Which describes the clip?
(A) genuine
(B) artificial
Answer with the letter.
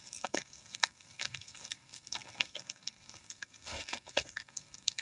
B